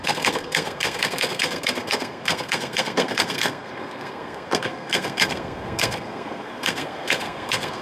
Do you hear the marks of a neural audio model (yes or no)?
yes